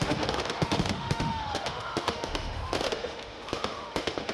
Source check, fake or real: fake